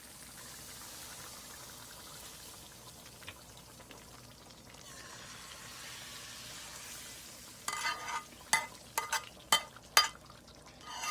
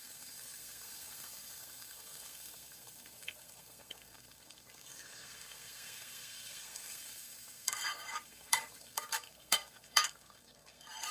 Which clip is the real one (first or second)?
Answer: first